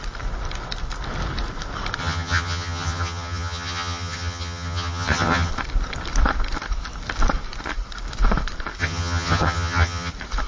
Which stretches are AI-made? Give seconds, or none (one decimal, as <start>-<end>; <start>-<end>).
2.0-5.5; 8.8-10.1